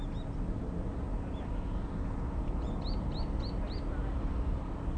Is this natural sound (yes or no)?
yes